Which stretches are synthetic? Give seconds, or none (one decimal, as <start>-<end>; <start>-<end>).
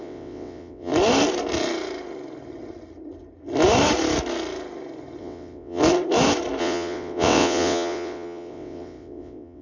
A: 0.0-0.9; 5.2-5.8; 6.6-9.6